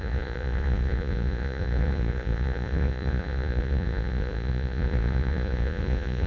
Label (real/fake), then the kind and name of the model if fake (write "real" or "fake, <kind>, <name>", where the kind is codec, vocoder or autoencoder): fake, vocoder, Vocos